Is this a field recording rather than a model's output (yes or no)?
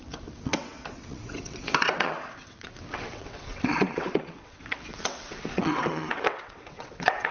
no